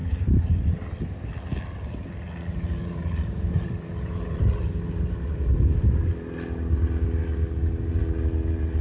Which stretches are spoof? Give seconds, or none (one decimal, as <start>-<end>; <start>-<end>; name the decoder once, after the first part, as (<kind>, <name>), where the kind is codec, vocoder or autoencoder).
0.0-0.5 (vocoder, BigVGAN v2); 2.8-6.1